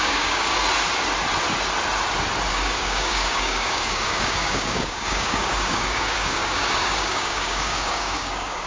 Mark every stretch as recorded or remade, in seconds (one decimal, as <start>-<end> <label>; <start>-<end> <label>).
0.0-0.5 remade; 0.5-2.5 recorded; 2.5-8.7 remade